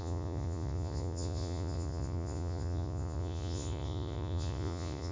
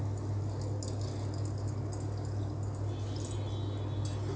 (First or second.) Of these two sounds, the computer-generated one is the first